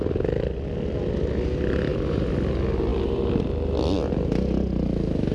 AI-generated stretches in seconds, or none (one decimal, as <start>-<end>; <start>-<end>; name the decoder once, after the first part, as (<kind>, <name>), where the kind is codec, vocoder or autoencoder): none